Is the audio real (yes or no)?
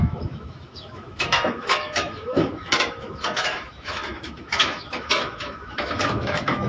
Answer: no